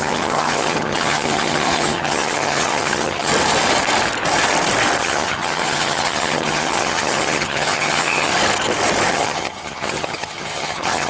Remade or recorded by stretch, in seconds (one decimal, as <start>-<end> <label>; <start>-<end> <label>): 0.0-3.3 remade; 3.3-5.0 recorded; 5.0-8.3 remade; 8.3-9.1 recorded; 9.1-11.1 remade